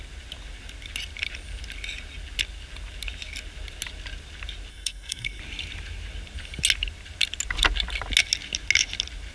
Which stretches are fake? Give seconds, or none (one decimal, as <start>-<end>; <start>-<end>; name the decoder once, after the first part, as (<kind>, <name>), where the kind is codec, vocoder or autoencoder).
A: 4.7-5.4 (codec, SNAC)